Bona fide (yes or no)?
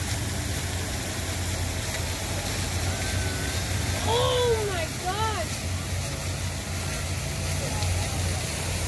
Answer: yes